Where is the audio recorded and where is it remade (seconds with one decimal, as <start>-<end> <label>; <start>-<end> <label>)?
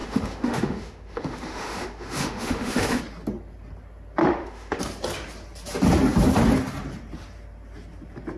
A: 0.0-3.0 remade; 3.0-4.2 recorded; 4.2-4.8 remade; 4.8-8.4 recorded